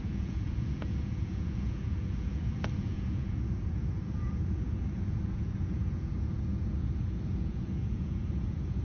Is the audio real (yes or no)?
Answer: no